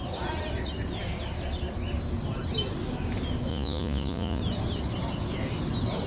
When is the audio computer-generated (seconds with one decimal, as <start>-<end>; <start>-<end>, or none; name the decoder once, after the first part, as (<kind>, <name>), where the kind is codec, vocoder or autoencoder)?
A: 3.5-4.4 (vocoder, Vocos)